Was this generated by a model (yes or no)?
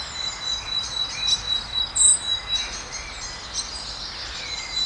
no